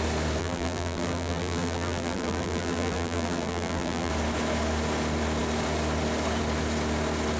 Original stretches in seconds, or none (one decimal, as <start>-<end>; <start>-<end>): 0.0-0.4; 4.1-7.4